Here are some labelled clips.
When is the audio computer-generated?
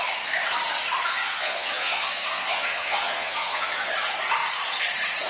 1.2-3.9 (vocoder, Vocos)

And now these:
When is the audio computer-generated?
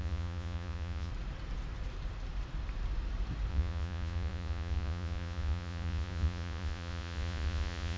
0.0-1.1 (vocoder, Vocos); 3.5-8.0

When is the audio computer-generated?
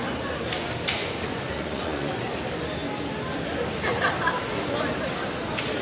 1.0-2.1 (vocoder, Vocos)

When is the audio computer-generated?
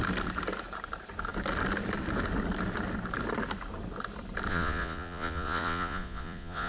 4.5-6.7 (vocoder, Vocos)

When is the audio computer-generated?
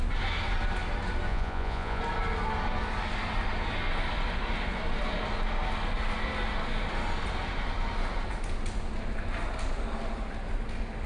1.3-2.0 (vocoder, Vocos)